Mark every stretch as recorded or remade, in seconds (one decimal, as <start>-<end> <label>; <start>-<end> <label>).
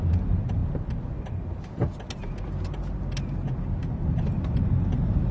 0.0-0.6 remade; 0.6-3.8 recorded; 3.8-5.3 remade